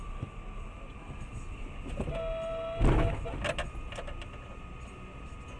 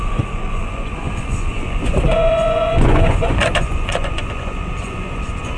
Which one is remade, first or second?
second